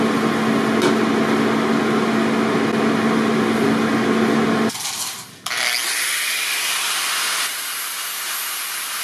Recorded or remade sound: recorded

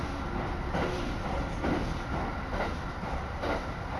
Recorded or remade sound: recorded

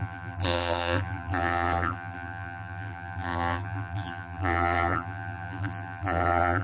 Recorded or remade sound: remade